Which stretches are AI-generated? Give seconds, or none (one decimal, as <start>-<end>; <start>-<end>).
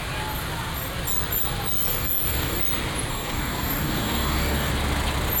1.9-2.6; 3.1-4.7